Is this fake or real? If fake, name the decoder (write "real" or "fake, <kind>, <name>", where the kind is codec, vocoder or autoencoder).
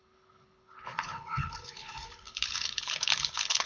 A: fake, codec, HILCodec